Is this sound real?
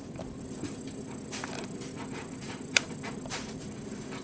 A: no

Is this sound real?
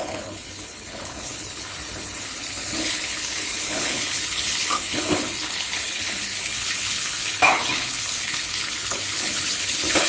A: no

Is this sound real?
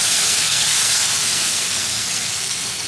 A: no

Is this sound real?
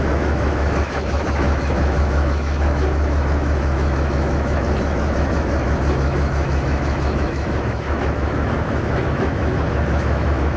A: no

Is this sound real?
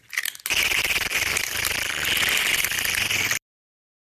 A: yes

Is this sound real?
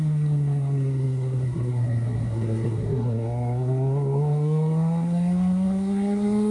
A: no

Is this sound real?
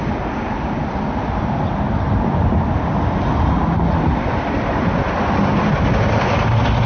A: yes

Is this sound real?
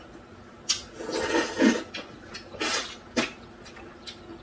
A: yes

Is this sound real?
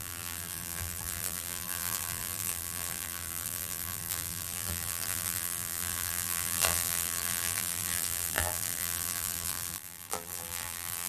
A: no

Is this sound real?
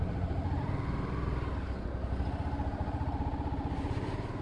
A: yes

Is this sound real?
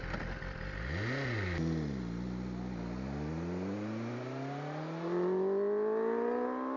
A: yes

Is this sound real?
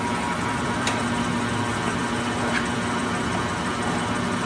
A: yes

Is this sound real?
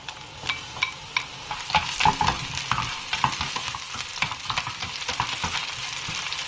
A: yes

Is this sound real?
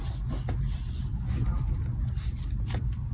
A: yes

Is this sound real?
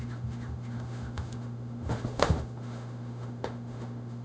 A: no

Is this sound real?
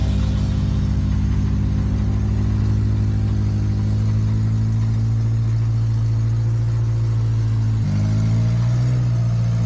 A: yes